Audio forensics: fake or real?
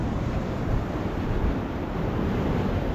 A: real